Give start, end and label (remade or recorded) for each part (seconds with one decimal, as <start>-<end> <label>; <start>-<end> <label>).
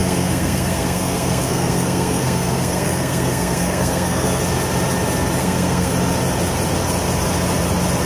0.0-4.4 remade; 4.4-5.4 recorded; 5.4-5.9 remade; 5.9-8.1 recorded